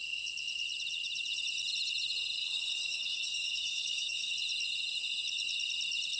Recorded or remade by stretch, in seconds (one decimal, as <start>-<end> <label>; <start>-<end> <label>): 0.0-2.4 recorded; 2.4-4.3 remade; 4.3-6.2 recorded